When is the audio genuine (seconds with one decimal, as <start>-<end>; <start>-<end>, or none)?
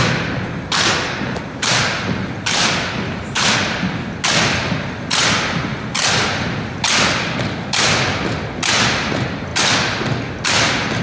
0.0-11.0